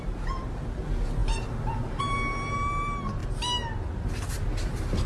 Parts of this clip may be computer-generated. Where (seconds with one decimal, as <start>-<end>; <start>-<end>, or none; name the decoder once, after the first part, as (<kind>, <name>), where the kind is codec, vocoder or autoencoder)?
none

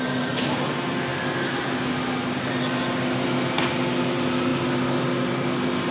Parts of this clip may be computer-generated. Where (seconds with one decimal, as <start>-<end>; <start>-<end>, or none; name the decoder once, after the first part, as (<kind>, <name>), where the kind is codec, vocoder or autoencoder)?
none